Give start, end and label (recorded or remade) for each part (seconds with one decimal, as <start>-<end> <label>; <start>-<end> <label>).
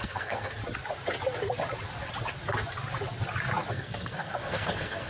0.0-0.6 remade; 0.6-3.7 recorded; 3.7-5.1 remade